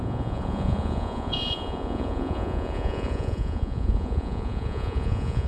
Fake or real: fake